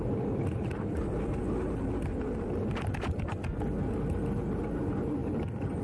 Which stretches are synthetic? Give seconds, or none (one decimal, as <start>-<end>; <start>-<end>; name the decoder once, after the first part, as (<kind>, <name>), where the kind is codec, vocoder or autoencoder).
none